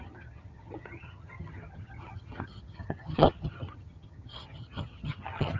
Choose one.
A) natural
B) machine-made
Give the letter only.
B